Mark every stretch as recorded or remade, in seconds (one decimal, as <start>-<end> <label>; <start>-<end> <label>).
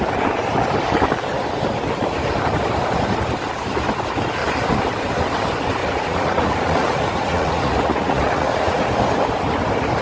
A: 0.0-5.8 recorded; 5.8-8.9 remade; 8.9-10.0 recorded